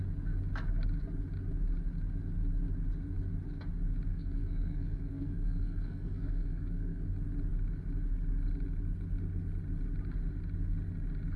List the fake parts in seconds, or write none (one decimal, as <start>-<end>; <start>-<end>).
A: 4.1-7.0